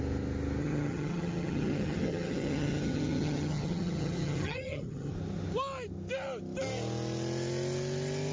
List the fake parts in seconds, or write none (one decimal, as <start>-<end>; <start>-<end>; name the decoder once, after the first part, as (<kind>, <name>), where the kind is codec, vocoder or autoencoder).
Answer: 0.6-5.1 (vocoder, HiFi-GAN)